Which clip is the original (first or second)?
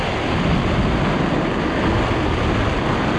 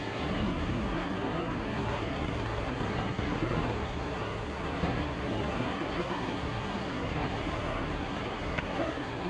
first